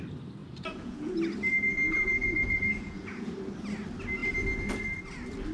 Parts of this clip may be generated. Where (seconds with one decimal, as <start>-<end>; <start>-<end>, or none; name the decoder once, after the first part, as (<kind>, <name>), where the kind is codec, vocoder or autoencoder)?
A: 0.4-1.1 (vocoder, Vocos); 1.9-3.3